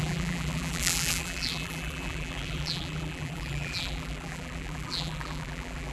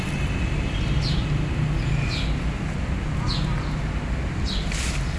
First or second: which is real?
second